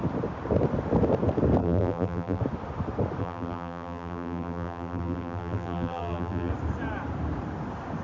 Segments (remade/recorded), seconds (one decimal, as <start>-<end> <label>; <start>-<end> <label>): 0.0-1.6 recorded; 1.6-2.4 remade; 2.4-3.2 recorded; 3.2-6.5 remade; 6.5-8.0 recorded